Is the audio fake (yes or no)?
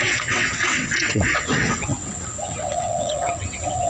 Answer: yes